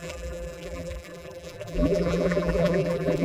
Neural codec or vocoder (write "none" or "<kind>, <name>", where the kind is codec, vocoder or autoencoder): vocoder, BigVGAN v2